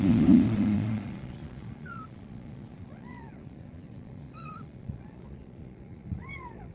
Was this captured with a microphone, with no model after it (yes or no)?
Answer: no